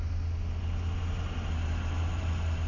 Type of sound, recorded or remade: recorded